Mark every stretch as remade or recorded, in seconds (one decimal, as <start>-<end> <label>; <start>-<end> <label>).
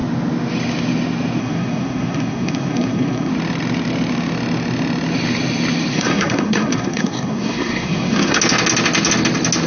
0.0-1.4 recorded; 1.4-3.3 remade; 3.3-5.9 recorded; 5.9-8.4 remade; 8.4-9.7 recorded